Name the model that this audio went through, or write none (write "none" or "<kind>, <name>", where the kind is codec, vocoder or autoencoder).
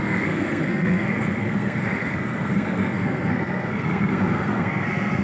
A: codec, SNAC